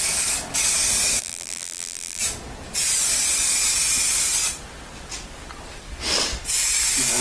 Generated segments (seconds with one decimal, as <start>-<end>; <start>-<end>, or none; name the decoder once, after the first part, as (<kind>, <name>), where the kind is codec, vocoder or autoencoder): 1.2-2.2 (vocoder, BigVGAN v2)